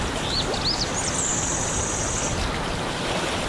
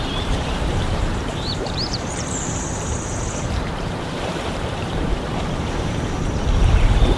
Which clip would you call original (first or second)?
first